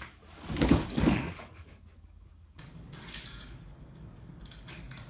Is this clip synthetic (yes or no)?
yes